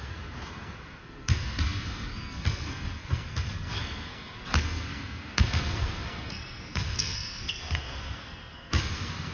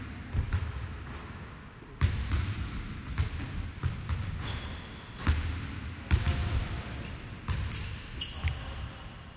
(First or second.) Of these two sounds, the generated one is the first